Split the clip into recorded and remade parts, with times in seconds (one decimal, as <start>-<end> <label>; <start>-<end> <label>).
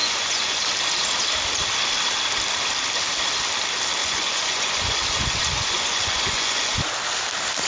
0.0-0.6 remade; 0.6-4.0 recorded; 4.0-6.8 remade; 6.8-7.7 recorded